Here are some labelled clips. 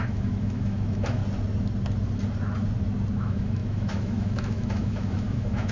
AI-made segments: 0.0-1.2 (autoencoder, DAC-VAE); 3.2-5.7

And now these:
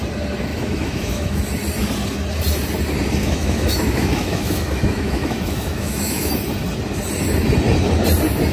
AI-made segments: 0.5-1.4 (autoencoder, DAC-VAE); 3.2-6.3

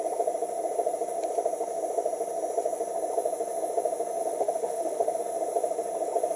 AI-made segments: 4.2-5.2 (autoencoder, DAC-VAE)